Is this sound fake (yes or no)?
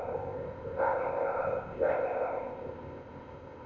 yes